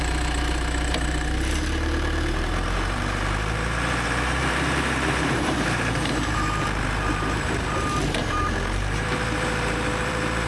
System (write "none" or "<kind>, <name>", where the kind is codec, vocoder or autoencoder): vocoder, BigVGAN v2